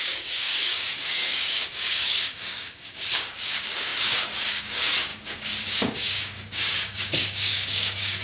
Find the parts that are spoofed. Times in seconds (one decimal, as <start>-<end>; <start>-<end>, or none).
0.0-8.2